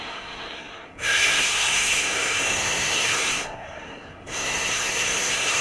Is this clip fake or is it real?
fake